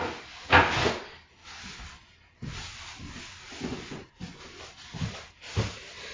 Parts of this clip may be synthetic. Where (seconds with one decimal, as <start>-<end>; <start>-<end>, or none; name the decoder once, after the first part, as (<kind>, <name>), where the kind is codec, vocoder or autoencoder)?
3.7-4.4 (vocoder, Vocos)